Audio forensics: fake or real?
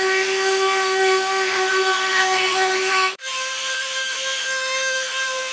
fake